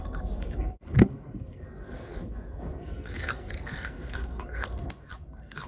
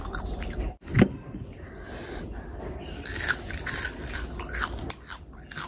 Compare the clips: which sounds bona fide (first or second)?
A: second